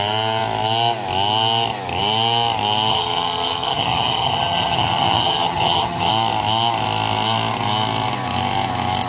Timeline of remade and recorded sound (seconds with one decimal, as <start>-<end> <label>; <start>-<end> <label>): 0.0-2.9 recorded; 2.9-6.1 remade; 6.1-9.1 recorded